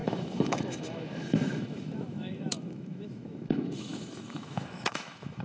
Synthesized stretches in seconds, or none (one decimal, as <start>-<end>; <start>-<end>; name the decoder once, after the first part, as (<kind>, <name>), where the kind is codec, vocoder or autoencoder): 0.0-5.4 (autoencoder, DAC-VAE)